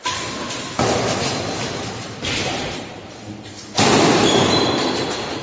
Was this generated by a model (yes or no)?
no